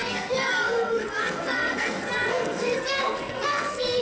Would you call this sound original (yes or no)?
no